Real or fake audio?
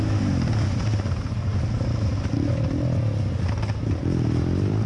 real